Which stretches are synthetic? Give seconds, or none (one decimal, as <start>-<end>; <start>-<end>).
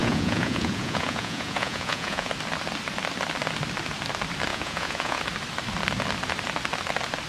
0.0-2.3; 4.5-5.2